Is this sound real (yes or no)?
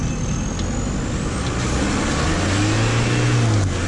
yes